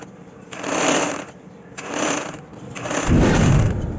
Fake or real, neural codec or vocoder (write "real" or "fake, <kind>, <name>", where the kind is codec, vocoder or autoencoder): fake, vocoder, BigVGAN v2